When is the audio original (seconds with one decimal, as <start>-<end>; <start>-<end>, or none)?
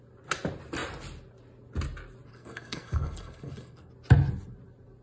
0.0-2.3; 3.9-5.0